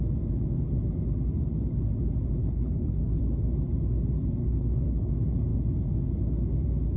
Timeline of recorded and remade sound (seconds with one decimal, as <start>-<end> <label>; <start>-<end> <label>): 0.0-2.4 recorded; 2.4-3.2 remade; 3.2-4.4 recorded; 4.4-5.1 remade; 5.1-7.0 recorded